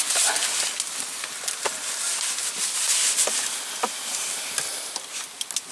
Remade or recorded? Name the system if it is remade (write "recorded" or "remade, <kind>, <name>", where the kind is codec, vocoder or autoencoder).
recorded